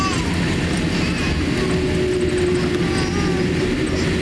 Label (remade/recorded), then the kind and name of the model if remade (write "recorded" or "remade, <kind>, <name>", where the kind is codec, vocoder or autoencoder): recorded